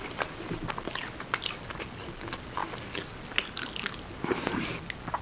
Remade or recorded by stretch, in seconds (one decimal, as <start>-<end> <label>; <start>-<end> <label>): 0.0-5.2 recorded